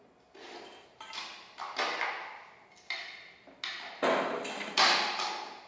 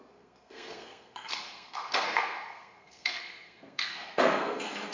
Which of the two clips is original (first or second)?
first